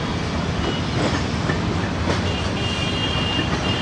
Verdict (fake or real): real